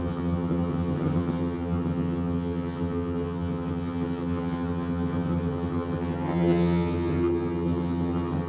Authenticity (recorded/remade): remade